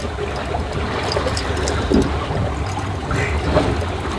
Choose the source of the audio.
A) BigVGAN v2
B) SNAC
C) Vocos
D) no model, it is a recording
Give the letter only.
D